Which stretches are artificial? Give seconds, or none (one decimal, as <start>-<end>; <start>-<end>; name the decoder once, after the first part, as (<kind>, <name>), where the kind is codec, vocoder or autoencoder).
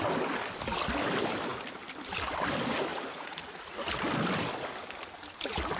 2.9-3.9 (vocoder, Vocos)